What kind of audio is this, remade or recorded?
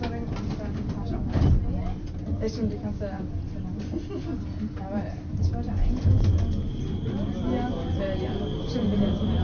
recorded